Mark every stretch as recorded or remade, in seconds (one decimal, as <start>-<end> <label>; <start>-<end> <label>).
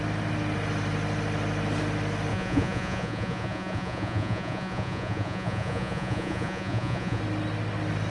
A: 0.0-2.3 recorded; 2.3-7.2 remade; 7.2-8.1 recorded